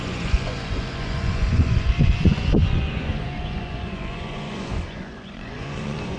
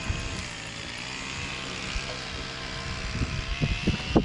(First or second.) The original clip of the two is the second